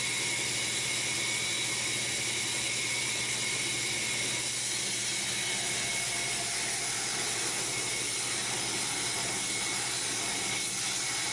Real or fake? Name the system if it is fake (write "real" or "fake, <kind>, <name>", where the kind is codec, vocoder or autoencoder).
real